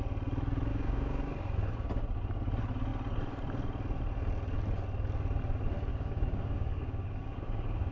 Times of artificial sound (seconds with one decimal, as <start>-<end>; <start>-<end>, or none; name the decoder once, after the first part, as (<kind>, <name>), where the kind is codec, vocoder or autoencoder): 0.7-1.2 (codec, DAC); 5.9-7.9